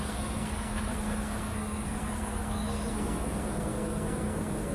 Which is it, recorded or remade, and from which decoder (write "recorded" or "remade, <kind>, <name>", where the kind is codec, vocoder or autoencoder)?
remade, codec, SNAC